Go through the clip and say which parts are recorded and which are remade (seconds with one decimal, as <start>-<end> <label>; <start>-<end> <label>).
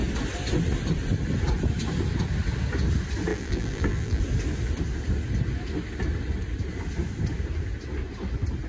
0.0-3.3 recorded; 3.3-4.2 remade; 4.2-8.7 recorded